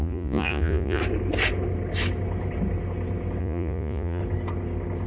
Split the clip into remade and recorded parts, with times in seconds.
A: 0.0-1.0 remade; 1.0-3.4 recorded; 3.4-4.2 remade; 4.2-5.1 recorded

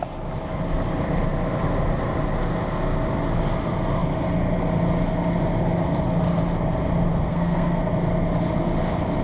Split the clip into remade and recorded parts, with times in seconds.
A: 0.0-7.1 recorded; 7.1-7.8 remade; 7.8-9.2 recorded

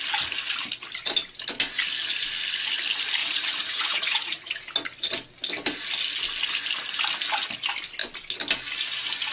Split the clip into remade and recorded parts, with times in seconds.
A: 0.0-3.2 recorded; 3.2-4.5 remade; 4.5-9.3 recorded

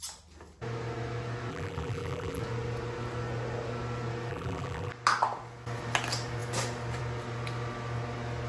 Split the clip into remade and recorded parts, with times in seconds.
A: 0.0-1.5 recorded; 1.5-2.4 remade; 2.4-4.3 recorded; 4.3-4.9 remade; 4.9-8.5 recorded

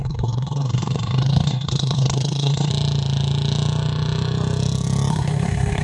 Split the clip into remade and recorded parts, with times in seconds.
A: 0.0-2.7 remade; 2.7-5.1 recorded; 5.1-5.8 remade

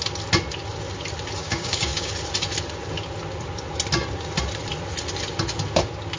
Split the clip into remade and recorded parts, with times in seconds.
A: 0.0-1.4 recorded; 1.4-2.1 remade; 2.1-6.2 recorded

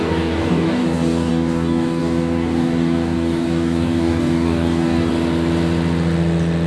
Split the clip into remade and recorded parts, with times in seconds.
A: 0.0-5.1 remade; 5.1-6.7 recorded